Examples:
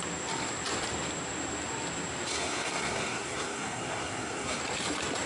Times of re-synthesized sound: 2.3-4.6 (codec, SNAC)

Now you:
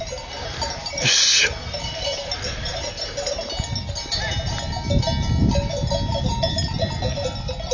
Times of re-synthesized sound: 0.8-2.9 (vocoder, BigVGAN v2)

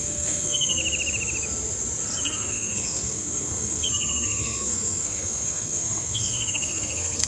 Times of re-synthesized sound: 0.0-0.8 (codec, SNAC); 2.2-7.3